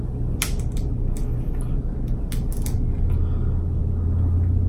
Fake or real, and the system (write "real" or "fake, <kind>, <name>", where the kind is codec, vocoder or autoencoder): real